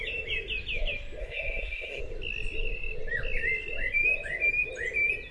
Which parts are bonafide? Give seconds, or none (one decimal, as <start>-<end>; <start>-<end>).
0.0-1.2; 2.0-5.3